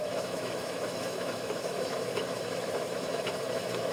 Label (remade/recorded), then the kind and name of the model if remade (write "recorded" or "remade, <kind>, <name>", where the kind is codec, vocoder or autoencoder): remade, autoencoder, DAC-VAE